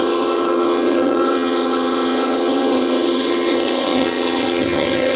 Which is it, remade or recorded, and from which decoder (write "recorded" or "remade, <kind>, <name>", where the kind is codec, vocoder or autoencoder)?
remade, vocoder, HiFi-GAN